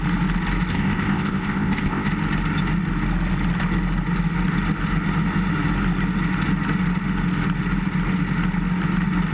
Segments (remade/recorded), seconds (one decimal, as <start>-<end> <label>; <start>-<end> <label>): 0.0-0.7 recorded; 0.7-2.1 remade; 2.1-9.3 recorded